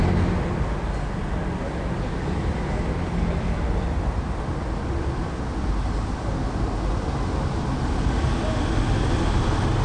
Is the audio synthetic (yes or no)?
no